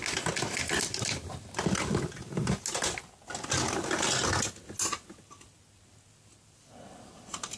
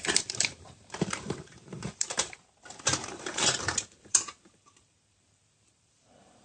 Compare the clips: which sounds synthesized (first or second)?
second